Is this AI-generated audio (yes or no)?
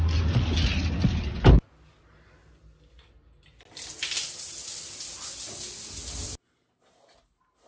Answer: no